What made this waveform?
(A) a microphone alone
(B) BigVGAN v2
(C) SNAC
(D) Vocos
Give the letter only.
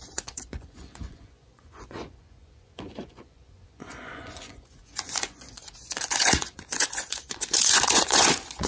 D